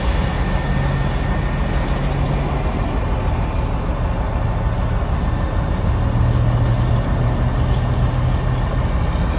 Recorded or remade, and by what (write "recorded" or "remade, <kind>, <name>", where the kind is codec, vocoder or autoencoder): recorded